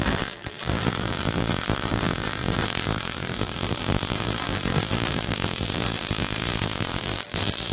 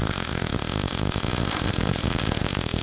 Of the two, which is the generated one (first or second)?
first